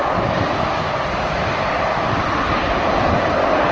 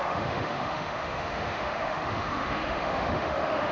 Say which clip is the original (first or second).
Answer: first